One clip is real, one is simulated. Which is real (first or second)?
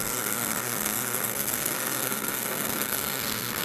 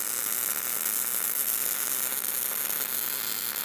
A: second